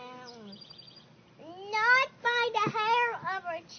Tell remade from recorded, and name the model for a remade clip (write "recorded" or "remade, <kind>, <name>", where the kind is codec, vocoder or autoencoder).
recorded